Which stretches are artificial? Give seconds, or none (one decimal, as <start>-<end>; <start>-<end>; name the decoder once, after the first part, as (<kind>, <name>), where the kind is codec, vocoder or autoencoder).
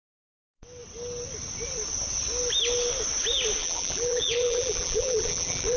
3.6-5.8 (vocoder, BigVGAN v2)